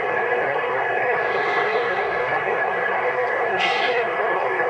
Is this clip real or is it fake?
fake